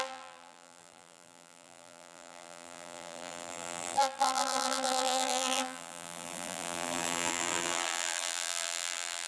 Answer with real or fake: fake